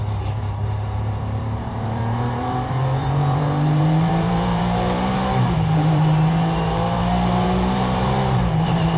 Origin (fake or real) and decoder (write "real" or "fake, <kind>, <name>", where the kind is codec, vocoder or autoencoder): fake, vocoder, BigVGAN v2